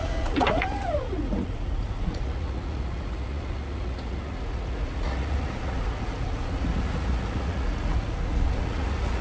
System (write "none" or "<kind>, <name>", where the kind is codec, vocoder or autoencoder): vocoder, Vocos